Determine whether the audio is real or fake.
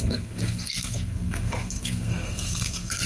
fake